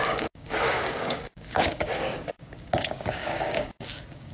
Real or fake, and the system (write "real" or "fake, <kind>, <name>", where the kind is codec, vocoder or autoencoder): fake, codec, DAC